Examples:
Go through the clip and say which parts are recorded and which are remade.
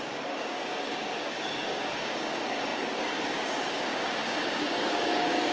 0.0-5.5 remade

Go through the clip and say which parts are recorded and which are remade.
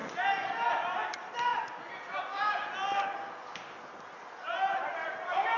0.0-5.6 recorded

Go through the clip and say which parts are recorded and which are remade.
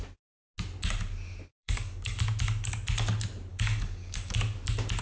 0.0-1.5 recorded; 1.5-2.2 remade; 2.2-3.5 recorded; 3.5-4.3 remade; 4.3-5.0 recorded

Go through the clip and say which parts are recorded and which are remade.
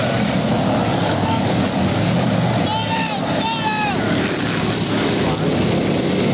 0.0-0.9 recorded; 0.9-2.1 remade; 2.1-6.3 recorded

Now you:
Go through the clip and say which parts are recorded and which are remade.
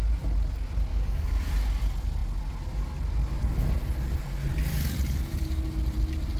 0.0-0.9 recorded; 0.9-1.5 remade; 1.5-6.4 recorded